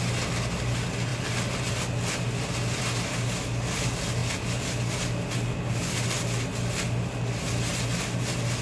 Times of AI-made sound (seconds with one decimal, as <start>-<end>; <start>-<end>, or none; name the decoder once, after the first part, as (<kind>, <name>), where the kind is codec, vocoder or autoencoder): none